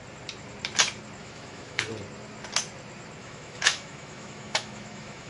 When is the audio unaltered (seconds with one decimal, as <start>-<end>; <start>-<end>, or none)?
0.0-1.2; 1.9-3.2